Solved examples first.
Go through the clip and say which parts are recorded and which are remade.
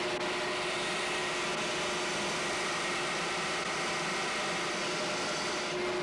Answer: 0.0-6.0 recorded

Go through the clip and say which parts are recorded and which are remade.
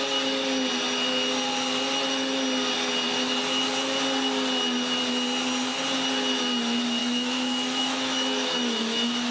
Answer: 0.0-7.0 recorded; 7.0-9.3 remade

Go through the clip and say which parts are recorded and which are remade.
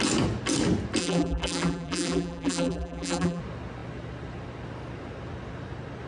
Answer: 0.0-1.0 recorded; 1.0-3.4 remade; 3.4-6.1 recorded